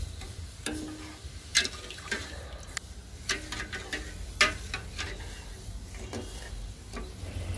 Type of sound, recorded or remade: recorded